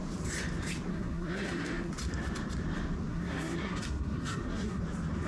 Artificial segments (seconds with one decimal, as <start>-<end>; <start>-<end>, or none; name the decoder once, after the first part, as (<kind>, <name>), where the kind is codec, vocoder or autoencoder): 0.9-1.9 (codec, SNAC); 3.1-4.8